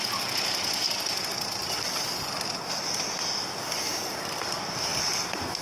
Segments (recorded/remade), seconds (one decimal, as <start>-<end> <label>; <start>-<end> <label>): 0.0-5.6 recorded